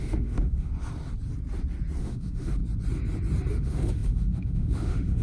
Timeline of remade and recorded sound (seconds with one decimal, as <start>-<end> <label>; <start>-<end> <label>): 0.0-0.7 remade; 0.7-2.0 recorded; 2.0-2.6 remade; 2.6-3.5 recorded; 3.5-5.2 remade